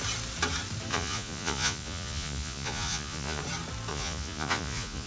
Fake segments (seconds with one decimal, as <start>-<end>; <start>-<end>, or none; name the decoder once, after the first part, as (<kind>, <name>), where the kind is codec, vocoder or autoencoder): 0.9-3.4 (vocoder, Vocos); 3.9-5.1